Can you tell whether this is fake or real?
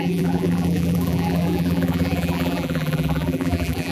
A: fake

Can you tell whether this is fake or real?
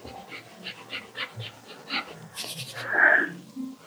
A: real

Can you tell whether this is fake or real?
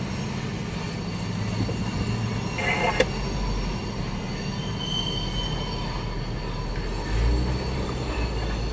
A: real